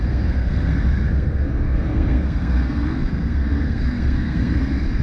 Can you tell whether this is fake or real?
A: fake